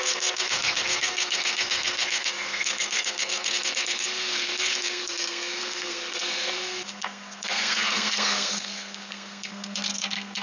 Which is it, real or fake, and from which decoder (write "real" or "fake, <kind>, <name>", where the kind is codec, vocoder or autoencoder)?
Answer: fake, codec, SNAC